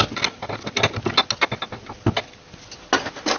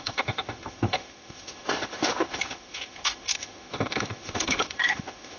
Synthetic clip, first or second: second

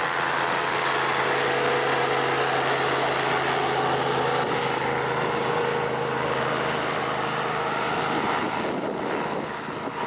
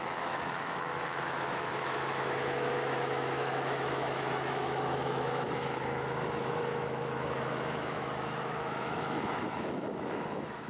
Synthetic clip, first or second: second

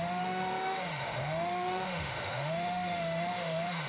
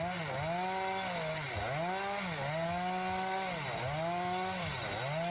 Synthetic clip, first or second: first